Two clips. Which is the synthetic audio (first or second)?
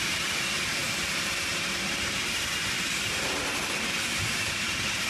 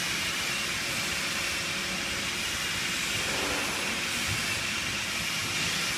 first